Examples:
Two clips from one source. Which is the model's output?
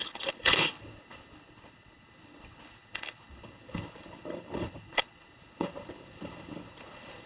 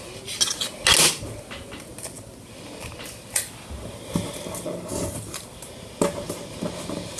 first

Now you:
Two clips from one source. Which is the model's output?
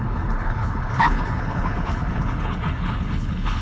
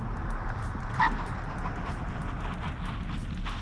first